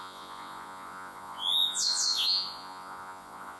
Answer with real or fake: fake